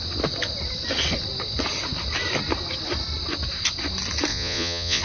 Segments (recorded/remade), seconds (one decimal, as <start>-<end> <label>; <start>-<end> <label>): 0.0-4.3 recorded; 4.3-5.0 remade